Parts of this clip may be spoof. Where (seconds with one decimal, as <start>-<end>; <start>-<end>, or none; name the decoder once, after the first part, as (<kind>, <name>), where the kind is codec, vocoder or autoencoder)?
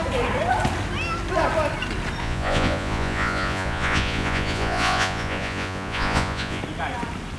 2.2-6.6 (vocoder, Vocos)